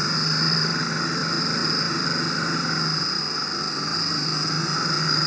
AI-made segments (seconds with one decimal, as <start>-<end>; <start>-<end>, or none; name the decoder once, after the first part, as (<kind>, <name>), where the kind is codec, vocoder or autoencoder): none